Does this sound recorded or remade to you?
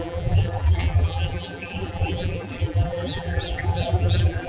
remade